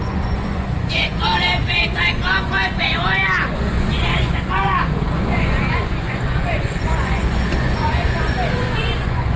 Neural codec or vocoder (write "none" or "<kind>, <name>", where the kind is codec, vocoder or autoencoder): vocoder, Vocos